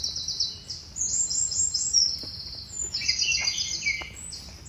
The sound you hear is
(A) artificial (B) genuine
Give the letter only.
B